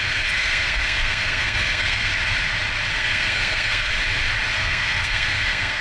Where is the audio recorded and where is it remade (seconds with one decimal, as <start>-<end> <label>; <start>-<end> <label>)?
0.0-2.1 remade; 2.1-2.9 recorded; 2.9-3.9 remade; 3.9-4.6 recorded; 4.6-5.8 remade